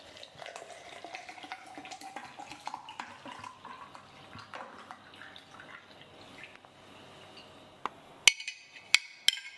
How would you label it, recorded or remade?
recorded